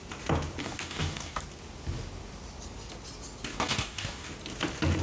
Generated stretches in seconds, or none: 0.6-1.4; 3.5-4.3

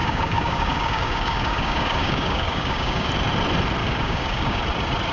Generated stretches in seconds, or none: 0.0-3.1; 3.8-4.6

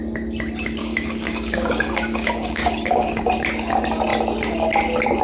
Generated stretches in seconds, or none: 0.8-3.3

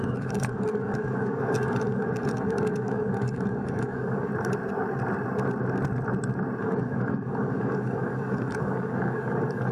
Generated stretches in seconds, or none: 0.0-4.3; 6.6-9.7